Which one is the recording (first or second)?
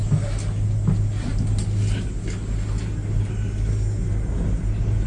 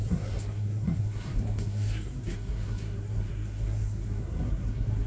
first